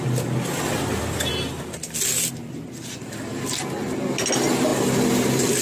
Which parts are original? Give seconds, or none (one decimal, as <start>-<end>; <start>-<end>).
0.0-5.6